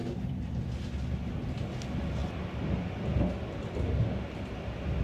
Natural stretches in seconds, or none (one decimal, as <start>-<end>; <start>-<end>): 0.5-5.0